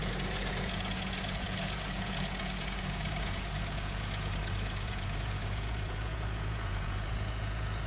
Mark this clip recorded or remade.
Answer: remade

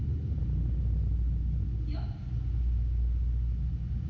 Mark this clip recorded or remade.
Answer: recorded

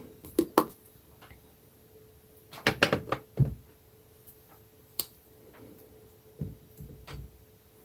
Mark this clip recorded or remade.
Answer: recorded